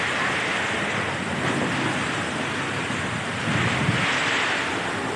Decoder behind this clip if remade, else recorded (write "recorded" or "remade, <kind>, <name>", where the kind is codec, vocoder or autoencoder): recorded